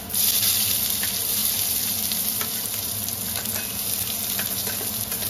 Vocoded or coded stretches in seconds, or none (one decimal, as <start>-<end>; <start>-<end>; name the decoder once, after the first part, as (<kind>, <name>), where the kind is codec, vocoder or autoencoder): none